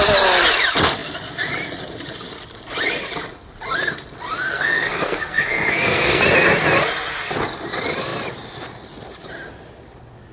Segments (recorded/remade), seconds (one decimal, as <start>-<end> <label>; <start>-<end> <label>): 0.0-4.5 recorded; 4.5-6.2 remade; 6.2-10.3 recorded